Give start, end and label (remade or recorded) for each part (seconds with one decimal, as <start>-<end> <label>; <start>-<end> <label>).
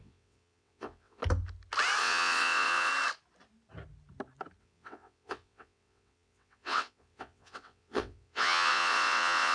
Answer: 0.0-1.2 remade; 1.2-2.0 recorded; 2.0-2.9 remade; 2.9-4.6 recorded; 4.6-9.5 remade